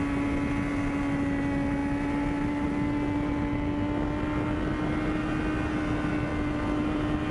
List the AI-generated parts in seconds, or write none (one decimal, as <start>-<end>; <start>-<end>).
none